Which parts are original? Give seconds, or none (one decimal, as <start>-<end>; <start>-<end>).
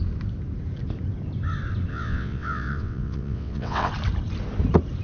0.0-1.9; 3.9-5.0